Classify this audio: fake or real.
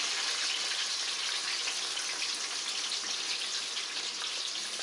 real